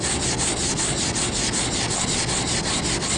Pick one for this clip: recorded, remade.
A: recorded